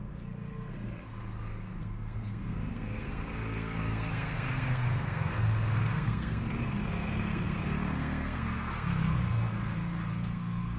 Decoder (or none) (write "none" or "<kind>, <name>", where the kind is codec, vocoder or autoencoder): codec, SNAC